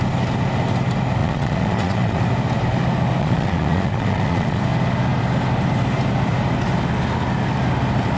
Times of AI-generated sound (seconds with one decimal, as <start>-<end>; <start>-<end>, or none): 1.2-2.2; 3.2-4.6